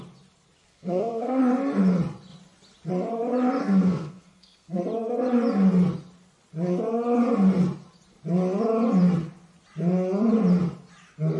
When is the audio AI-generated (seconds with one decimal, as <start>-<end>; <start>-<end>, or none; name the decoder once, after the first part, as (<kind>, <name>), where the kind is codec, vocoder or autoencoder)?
0.6-1.4 (codec, SNAC); 3.6-4.8